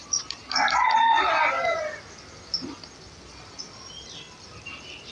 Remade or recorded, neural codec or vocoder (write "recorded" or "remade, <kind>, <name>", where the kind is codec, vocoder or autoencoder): recorded